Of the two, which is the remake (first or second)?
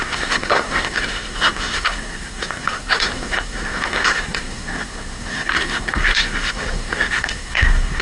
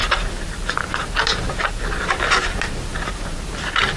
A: first